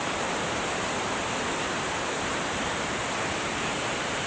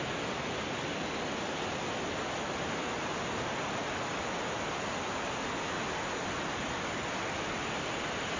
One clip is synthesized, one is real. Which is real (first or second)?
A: second